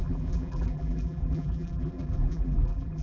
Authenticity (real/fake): fake